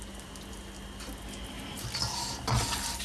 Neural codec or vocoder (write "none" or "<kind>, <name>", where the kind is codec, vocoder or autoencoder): none